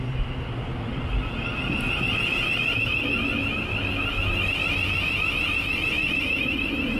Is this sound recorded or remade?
recorded